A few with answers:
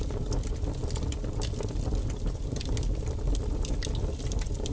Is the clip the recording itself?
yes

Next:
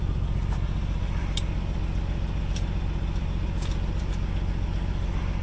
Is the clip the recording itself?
yes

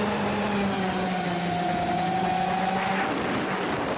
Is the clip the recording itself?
yes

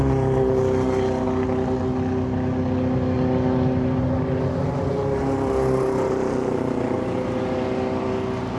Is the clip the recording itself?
yes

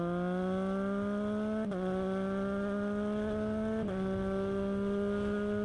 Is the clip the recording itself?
yes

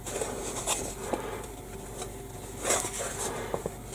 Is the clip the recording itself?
yes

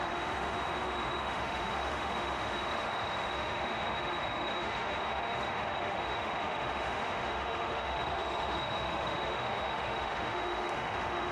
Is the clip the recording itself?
no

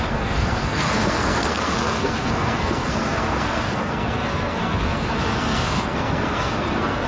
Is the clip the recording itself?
no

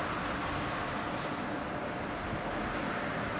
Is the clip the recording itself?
yes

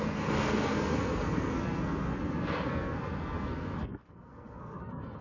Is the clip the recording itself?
no